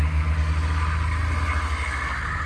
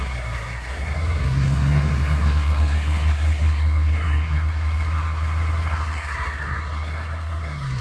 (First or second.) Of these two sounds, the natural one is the first